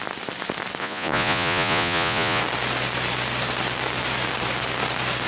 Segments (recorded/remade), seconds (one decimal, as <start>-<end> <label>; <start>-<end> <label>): 0.0-0.8 recorded; 0.8-2.4 remade; 2.4-5.3 recorded